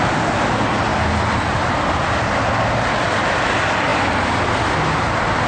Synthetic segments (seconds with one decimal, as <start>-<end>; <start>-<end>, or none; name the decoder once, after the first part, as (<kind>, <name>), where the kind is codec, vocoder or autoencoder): none